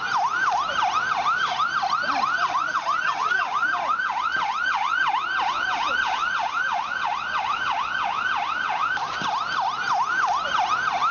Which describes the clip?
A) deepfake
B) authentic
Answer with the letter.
B